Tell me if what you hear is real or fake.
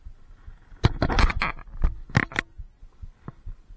real